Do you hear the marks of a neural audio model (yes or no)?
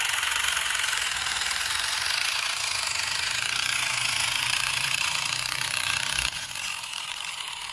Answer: yes